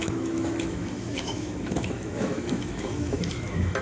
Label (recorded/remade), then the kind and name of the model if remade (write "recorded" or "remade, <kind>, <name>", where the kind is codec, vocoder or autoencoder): remade, autoencoder, DAC-VAE